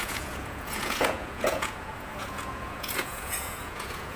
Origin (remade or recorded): remade